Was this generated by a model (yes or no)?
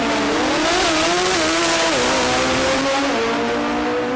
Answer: no